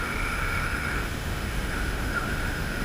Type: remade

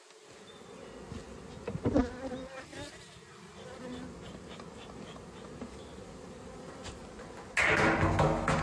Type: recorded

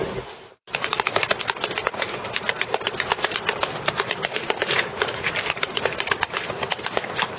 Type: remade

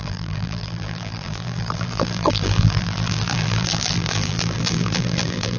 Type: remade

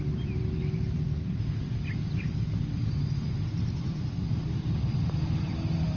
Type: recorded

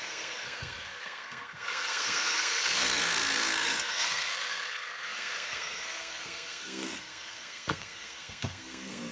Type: remade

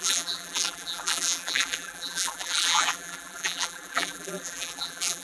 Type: remade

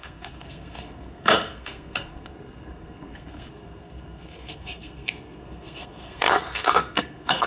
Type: remade